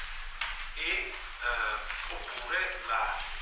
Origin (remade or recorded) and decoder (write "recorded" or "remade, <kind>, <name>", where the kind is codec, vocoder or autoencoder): recorded